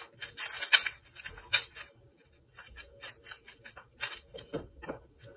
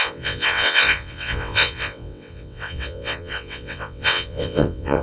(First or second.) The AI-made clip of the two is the second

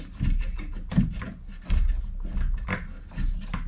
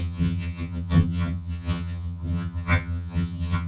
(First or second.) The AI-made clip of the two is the second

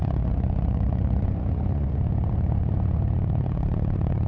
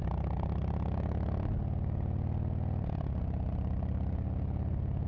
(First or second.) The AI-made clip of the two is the first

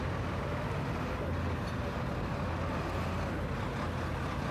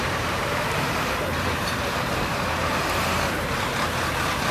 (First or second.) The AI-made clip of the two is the second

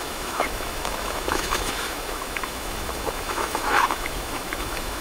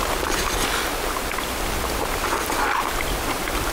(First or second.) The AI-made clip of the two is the first